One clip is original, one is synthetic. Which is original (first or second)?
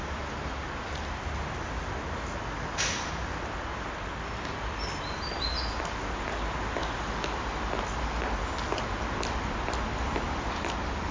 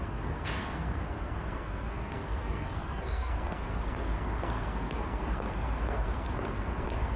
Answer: first